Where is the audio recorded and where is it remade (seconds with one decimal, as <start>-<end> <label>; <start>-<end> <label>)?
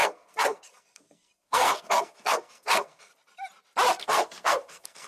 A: 0.0-3.1 remade; 3.1-4.0 recorded; 4.0-5.1 remade